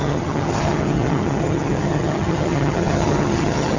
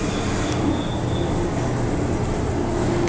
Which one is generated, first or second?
first